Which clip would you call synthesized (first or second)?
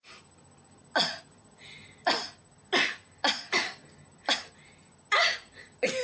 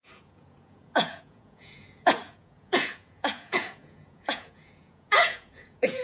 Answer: second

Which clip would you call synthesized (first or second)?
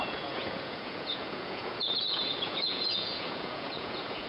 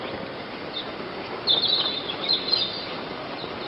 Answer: first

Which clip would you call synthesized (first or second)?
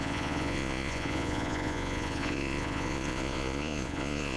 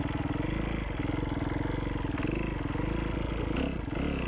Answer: first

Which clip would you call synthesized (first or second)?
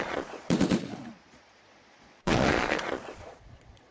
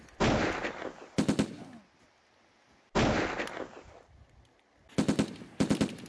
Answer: first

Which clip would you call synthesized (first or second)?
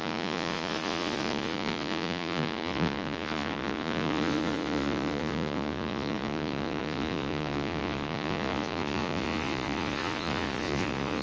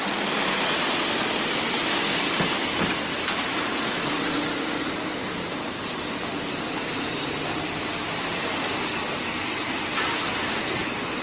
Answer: first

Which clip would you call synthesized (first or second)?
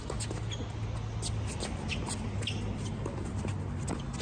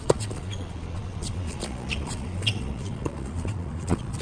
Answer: second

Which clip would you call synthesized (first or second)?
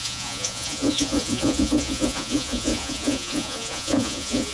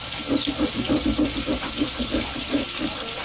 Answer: first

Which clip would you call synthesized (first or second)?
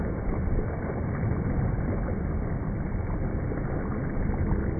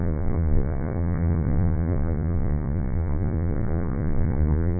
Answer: second